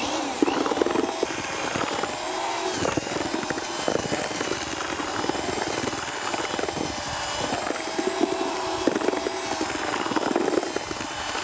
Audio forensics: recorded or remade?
recorded